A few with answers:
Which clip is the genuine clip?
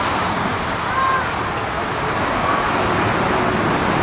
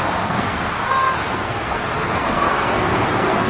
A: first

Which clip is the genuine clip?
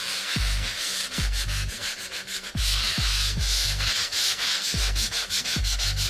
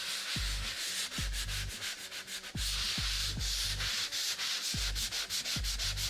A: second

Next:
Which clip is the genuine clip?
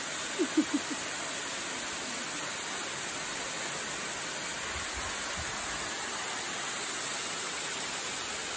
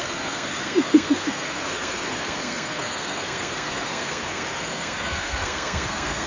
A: first